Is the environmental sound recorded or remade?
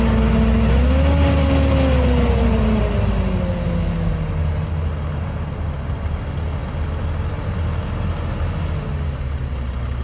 recorded